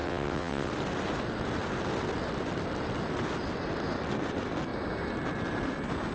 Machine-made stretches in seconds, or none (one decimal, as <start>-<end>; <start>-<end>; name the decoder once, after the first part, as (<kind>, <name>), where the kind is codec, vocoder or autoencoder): 0.0-0.7 (vocoder, WaveNeXt)

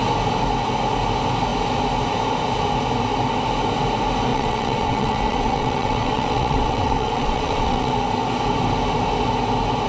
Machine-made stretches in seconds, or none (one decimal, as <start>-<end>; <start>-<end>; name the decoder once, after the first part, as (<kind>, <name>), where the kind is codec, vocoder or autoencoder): 4.3-7.9 (vocoder, WaveNeXt)